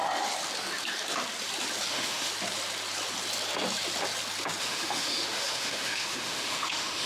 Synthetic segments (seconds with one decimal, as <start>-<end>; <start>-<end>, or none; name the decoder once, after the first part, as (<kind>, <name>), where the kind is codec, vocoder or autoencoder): 1.9-2.3 (autoencoder, DAC-VAE); 4.6-7.1